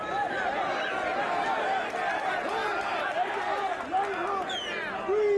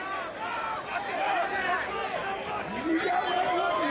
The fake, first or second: second